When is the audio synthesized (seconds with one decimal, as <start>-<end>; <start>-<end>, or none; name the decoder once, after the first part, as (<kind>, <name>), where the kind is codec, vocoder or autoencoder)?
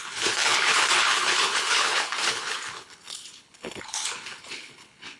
0.0-5.2 (codec, HILCodec)